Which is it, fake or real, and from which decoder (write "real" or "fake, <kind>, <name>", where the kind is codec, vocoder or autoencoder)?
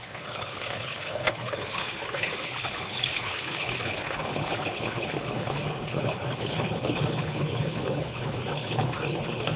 fake, codec, HILCodec